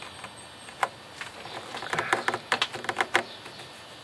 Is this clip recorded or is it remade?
recorded